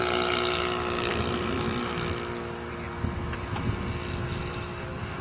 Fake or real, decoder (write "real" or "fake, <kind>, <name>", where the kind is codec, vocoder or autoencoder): real